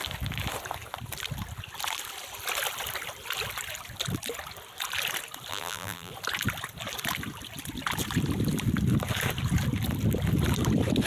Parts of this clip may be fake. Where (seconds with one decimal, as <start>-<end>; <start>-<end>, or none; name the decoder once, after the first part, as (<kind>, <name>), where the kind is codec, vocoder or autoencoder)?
5.5-6.1 (vocoder, BigVGAN v2)